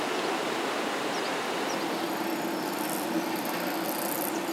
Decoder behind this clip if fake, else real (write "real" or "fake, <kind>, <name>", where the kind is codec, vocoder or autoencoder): real